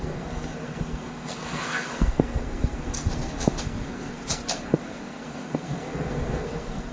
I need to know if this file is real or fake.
fake